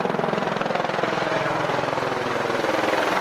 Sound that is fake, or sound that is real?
real